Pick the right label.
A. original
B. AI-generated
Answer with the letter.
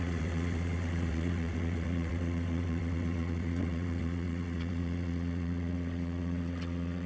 B